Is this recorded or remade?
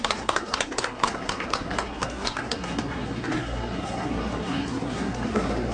remade